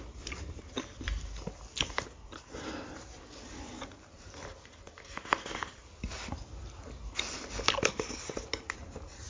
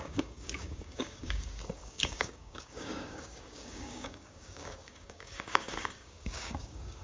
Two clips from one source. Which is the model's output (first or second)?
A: second